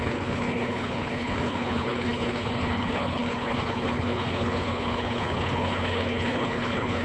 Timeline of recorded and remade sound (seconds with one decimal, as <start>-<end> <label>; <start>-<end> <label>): 0.0-7.0 remade